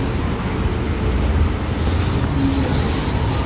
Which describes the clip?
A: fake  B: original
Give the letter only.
B